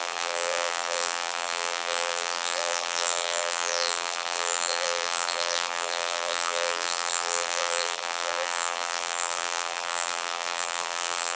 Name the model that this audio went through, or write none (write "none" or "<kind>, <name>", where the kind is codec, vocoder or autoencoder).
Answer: vocoder, BigVGAN v2